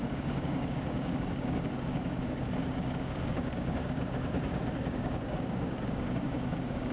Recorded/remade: remade